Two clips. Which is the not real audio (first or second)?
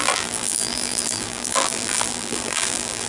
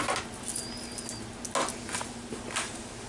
first